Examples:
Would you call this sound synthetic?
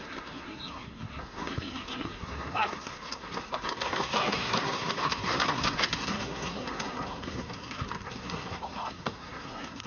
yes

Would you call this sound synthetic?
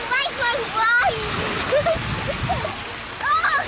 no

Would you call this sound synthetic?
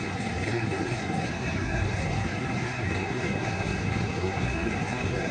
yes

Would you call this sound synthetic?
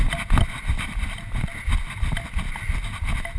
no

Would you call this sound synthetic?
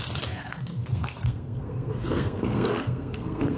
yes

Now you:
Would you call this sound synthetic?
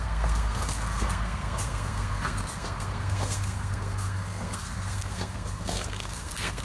yes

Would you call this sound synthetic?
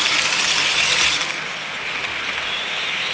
no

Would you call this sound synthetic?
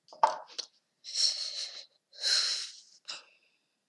no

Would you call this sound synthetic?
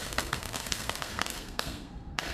yes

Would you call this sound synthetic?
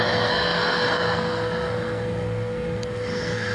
yes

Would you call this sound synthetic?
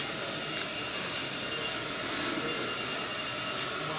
no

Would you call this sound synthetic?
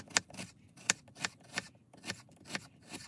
no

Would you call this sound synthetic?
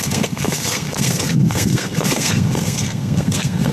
yes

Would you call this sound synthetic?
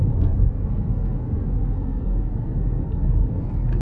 yes